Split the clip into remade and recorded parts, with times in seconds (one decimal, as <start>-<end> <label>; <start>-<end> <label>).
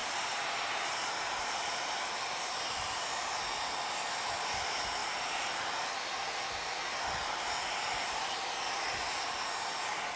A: 0.0-10.2 recorded